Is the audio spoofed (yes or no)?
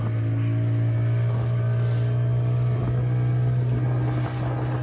no